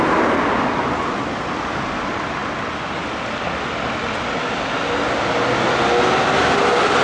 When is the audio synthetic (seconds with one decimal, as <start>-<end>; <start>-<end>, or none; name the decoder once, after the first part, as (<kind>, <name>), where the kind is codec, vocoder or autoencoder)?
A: none